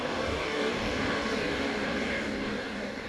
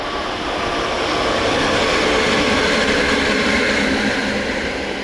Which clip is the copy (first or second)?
first